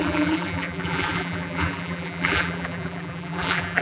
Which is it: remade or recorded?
remade